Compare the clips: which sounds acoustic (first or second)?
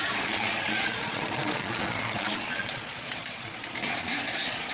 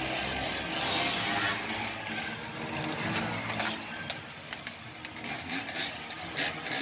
second